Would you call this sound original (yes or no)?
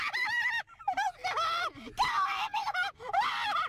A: no